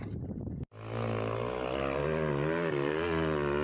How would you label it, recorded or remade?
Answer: recorded